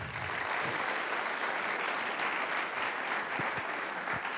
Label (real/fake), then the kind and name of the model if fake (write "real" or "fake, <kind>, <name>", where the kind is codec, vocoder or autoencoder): real